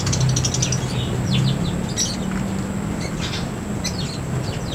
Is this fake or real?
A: real